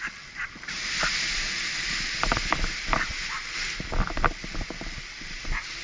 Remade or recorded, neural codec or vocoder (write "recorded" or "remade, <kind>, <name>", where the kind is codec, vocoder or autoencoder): recorded